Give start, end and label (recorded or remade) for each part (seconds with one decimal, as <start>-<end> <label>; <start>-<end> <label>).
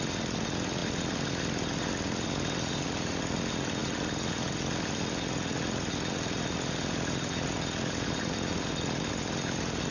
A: 0.0-9.9 recorded